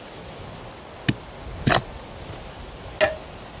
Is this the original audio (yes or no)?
yes